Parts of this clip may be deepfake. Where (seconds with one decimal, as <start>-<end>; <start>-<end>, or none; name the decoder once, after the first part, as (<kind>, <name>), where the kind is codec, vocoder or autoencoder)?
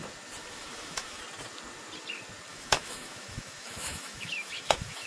0.4-1.2 (autoencoder, DAC-VAE); 2.5-5.1